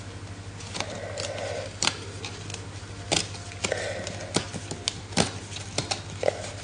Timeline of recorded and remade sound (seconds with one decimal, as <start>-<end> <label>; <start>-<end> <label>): 0.0-6.6 recorded